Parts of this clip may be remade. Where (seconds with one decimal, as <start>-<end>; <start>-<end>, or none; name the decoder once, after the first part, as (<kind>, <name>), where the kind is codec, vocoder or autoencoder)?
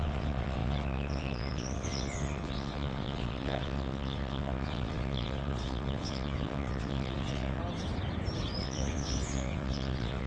0.0-7.6 (vocoder, WaveNeXt); 8.6-10.3